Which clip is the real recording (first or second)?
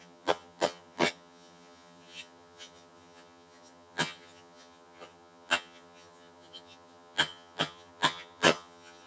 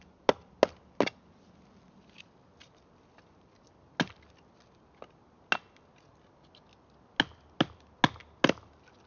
second